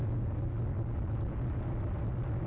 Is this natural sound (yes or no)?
yes